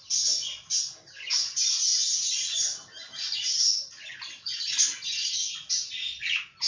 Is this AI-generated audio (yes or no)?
no